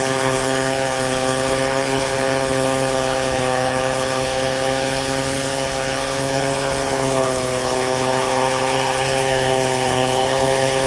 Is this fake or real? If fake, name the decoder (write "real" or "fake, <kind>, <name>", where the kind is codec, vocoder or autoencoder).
fake, codec, HILCodec